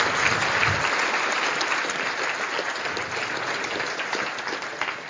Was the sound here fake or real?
real